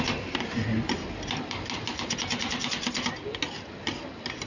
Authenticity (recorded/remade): recorded